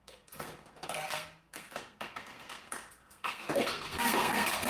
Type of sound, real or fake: fake